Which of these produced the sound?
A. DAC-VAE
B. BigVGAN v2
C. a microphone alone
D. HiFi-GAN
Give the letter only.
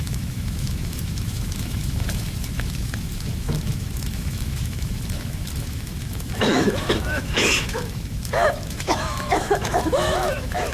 A